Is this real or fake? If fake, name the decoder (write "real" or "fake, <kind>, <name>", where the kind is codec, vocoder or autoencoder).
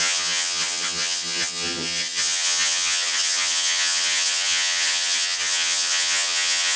fake, vocoder, HiFi-GAN